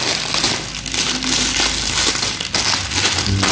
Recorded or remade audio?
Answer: recorded